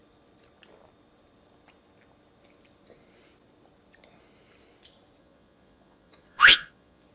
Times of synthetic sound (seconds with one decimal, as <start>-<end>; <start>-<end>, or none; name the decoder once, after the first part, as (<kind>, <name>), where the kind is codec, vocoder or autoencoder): 5.2-7.1 (vocoder, Vocos)